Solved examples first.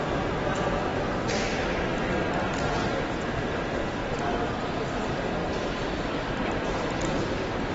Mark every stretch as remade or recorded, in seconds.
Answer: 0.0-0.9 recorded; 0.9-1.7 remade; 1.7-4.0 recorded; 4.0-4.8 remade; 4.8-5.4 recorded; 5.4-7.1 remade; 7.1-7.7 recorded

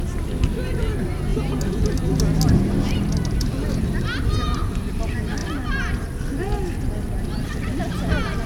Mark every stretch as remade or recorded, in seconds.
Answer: 0.0-8.5 recorded

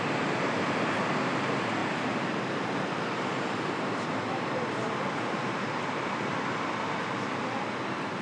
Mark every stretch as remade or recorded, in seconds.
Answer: 0.0-1.8 recorded; 1.8-6.5 remade; 6.5-8.2 recorded